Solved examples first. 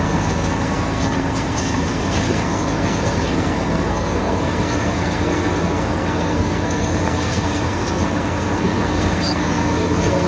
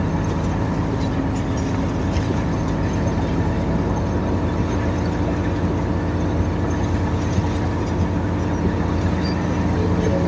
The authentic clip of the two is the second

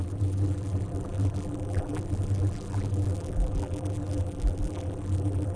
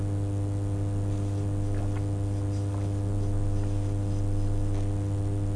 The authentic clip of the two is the second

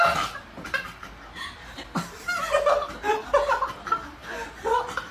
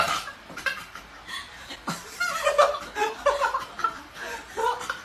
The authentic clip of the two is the first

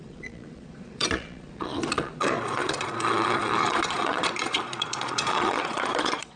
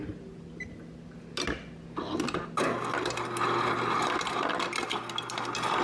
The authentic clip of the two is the second